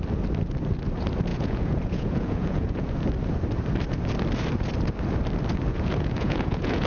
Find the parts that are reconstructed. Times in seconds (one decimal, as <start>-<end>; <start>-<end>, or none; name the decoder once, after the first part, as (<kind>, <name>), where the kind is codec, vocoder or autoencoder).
1.3-2.9 (vocoder, Vocos); 5.7-6.9